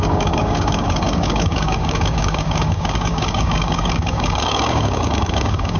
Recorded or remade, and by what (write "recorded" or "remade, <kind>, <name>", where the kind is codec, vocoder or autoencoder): remade, codec, DAC